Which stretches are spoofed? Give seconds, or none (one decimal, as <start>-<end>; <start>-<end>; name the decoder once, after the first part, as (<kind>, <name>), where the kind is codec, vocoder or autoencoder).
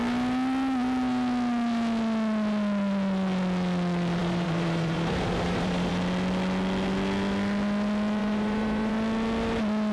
4.2-5.9 (vocoder, BigVGAN v2); 8.2-8.9